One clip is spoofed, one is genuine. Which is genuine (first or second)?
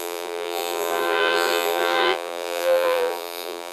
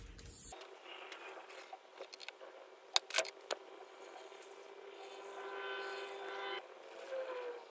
second